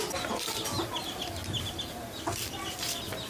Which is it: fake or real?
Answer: real